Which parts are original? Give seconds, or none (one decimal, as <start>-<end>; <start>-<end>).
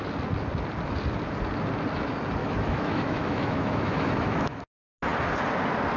0.0-2.4; 4.6-6.0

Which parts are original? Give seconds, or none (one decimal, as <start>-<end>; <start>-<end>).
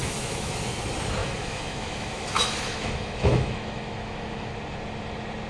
0.5-1.2; 4.5-5.5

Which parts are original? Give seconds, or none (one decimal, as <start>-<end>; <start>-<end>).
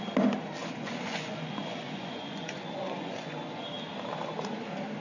0.0-0.6; 3.6-5.0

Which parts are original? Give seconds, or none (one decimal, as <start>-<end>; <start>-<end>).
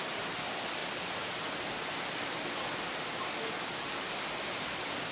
0.0-5.1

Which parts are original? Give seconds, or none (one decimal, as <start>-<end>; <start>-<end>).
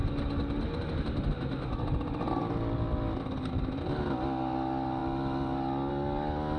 0.0-6.6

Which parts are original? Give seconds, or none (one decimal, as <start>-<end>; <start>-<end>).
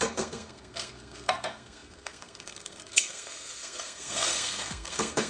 none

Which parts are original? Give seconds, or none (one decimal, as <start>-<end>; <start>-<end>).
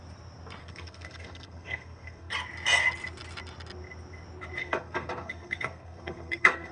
0.0-0.6; 2.3-4.6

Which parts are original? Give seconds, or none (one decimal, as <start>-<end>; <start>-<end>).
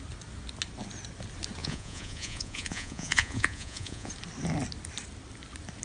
0.0-1.6; 4.1-5.8